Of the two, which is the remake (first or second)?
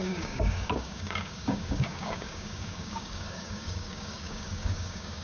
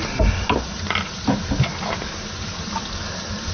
first